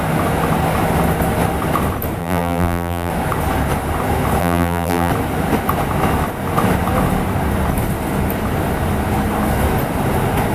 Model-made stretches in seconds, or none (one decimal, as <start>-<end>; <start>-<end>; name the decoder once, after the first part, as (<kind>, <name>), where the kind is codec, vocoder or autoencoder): 2.2-3.1 (vocoder, BigVGAN v2); 4.4-5.1